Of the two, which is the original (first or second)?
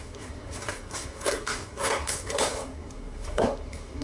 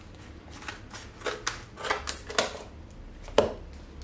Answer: second